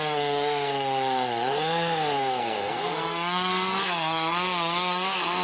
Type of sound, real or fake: fake